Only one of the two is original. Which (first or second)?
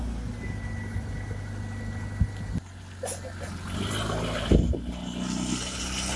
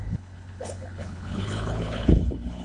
first